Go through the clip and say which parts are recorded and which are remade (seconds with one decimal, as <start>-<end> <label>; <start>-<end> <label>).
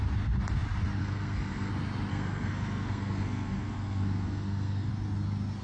0.0-1.0 recorded; 1.0-1.7 remade; 1.7-2.1 recorded; 2.1-4.9 remade; 4.9-5.6 recorded